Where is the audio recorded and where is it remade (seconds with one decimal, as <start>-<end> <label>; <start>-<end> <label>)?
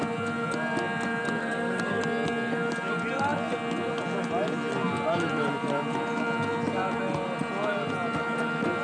0.0-1.4 recorded; 1.4-2.0 remade; 2.0-8.8 recorded